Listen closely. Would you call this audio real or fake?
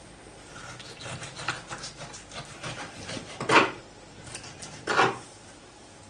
real